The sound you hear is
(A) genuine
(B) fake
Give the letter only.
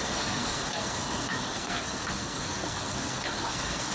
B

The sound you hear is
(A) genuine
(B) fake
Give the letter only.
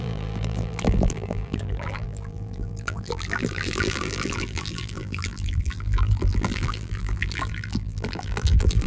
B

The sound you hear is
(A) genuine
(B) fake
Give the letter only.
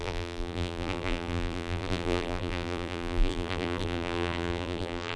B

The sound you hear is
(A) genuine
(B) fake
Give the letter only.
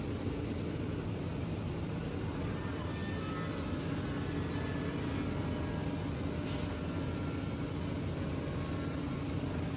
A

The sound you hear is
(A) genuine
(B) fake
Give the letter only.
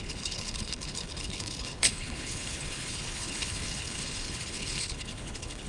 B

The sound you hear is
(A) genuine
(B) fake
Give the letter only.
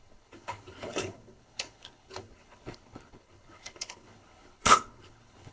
B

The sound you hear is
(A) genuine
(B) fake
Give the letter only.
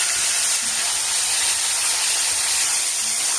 A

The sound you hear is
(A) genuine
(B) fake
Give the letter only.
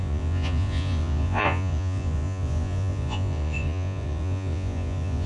B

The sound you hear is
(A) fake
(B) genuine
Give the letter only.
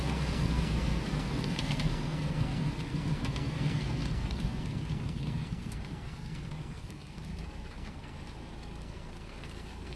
A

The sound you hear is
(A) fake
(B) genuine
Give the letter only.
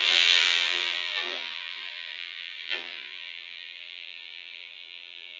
A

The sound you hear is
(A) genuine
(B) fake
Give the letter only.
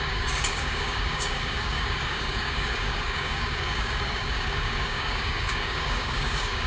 B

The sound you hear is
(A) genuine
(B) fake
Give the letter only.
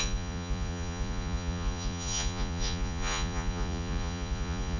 B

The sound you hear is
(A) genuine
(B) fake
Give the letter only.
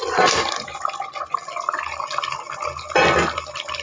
A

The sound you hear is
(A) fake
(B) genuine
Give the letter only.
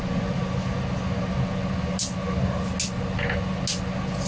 B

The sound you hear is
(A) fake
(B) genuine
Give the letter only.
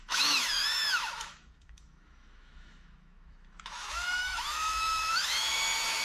A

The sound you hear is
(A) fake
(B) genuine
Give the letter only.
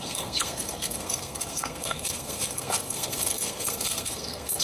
A